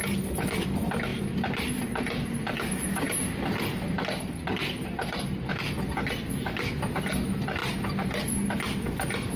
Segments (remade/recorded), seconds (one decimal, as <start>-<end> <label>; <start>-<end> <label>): 0.0-9.4 recorded